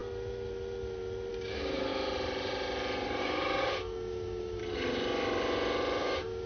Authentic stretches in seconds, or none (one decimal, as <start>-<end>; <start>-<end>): 0.0-1.3; 1.9-3.2; 4.6-6.0